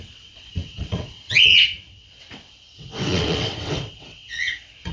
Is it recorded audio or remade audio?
remade